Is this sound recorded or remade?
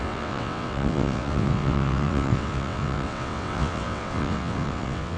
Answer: remade